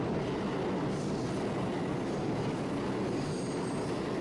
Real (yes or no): yes